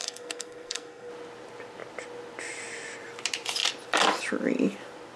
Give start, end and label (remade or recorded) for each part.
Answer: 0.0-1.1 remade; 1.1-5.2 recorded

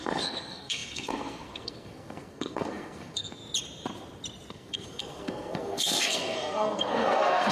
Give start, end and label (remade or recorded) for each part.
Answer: 0.0-3.4 remade; 3.4-4.5 recorded; 4.5-7.5 remade

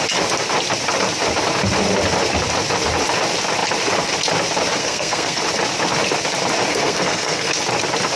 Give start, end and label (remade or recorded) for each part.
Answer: 0.0-4.8 recorded; 4.8-5.4 remade; 5.4-6.7 recorded; 6.7-7.5 remade; 7.5-8.2 recorded

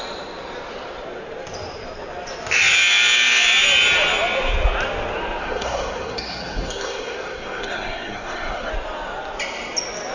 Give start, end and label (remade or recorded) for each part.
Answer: 0.0-5.4 recorded; 5.4-8.7 remade; 8.7-10.1 recorded

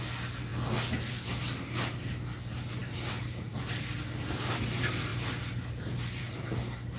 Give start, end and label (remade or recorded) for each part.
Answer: 0.0-7.0 recorded